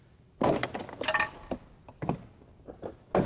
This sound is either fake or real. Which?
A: real